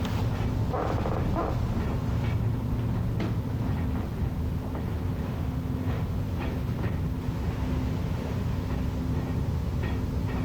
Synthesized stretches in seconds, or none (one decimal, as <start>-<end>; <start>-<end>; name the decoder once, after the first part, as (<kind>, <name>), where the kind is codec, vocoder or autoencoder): 5.3-6.2 (autoencoder, DAC-VAE)